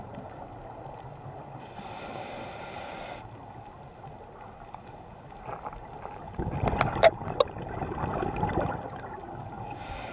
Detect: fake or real real